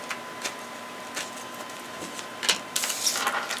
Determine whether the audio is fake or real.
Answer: real